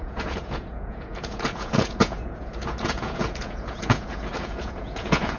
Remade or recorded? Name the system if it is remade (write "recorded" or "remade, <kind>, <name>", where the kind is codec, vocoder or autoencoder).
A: remade, vocoder, Vocos